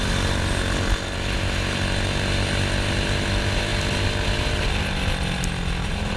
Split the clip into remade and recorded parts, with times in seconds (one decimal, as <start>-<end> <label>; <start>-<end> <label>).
0.0-6.2 recorded

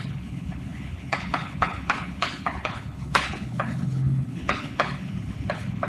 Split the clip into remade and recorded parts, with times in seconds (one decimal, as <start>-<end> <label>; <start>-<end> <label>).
0.0-5.9 remade

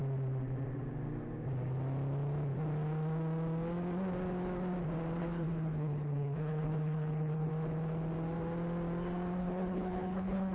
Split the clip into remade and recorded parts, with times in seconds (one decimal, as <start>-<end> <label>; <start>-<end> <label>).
0.0-5.2 recorded; 5.2-7.5 remade; 7.5-9.4 recorded; 9.4-10.5 remade

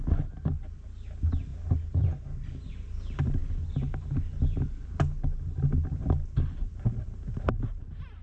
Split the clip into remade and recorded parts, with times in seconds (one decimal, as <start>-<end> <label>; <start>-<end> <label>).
0.0-8.2 recorded

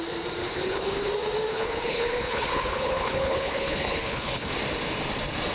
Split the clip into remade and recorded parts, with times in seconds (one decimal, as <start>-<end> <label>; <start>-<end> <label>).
0.0-0.4 recorded; 0.4-1.1 remade; 1.1-1.5 recorded; 1.5-4.5 remade; 4.5-5.5 recorded

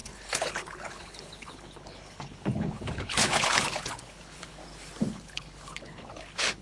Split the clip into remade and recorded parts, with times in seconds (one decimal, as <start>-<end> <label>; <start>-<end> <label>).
0.0-4.6 remade; 4.6-5.1 recorded; 5.1-6.6 remade

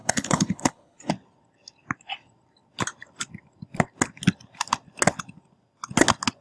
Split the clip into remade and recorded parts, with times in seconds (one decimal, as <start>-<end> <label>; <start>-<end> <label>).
0.0-1.1 remade; 1.1-6.4 recorded

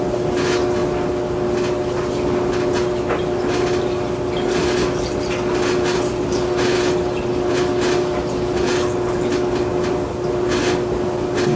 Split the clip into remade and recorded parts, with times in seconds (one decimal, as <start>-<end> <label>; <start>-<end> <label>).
0.0-11.6 recorded